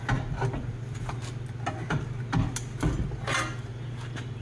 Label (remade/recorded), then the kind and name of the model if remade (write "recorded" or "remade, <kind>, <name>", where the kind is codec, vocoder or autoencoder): recorded